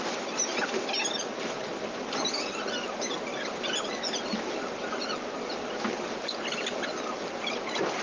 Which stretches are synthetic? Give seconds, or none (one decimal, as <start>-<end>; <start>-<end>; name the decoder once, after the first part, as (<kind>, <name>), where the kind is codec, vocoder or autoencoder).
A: none